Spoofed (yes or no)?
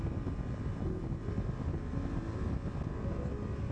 no